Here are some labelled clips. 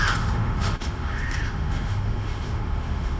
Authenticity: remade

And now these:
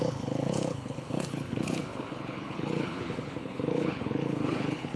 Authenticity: remade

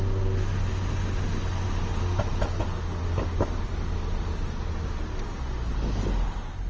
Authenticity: recorded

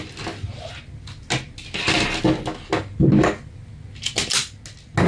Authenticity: recorded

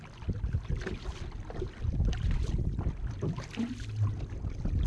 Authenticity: recorded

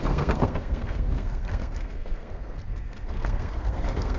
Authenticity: remade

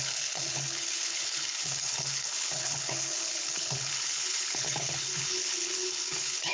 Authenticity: remade